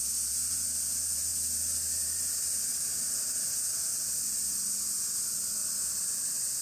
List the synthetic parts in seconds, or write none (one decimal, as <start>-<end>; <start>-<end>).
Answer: none